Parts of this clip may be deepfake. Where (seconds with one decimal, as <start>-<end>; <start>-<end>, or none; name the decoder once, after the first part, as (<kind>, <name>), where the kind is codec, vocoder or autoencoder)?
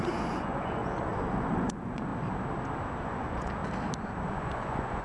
0.0-2.1 (vocoder, Vocos); 3.0-3.6; 4.3-5.0